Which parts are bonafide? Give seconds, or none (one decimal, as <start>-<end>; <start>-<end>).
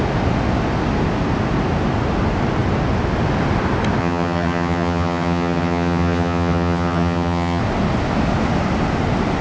0.0-4.0; 7.6-9.4